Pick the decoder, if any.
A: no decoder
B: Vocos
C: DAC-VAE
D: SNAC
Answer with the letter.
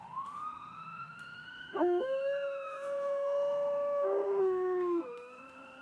C